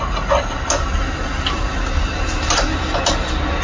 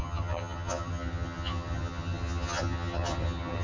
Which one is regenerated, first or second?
second